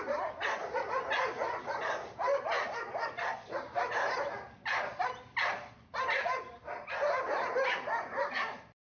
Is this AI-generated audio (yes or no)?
no